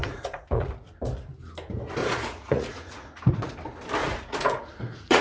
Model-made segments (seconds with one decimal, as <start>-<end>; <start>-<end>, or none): 0.0-0.7; 2.0-3.5; 4.0-5.2